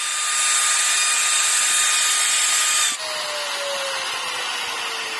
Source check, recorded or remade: recorded